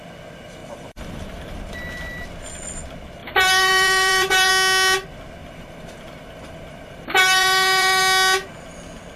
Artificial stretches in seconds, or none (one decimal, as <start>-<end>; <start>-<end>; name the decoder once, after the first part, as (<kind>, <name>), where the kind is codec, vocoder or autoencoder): 0.6-1.7 (vocoder, BigVGAN v2); 3.2-4.5; 5.4-8.0